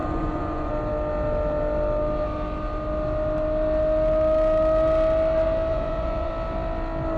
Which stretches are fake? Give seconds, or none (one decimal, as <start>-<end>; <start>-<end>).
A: 0.0-0.7; 5.7-6.3